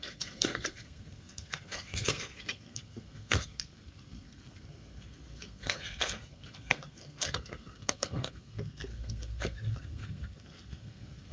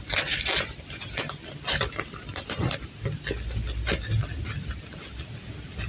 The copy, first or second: first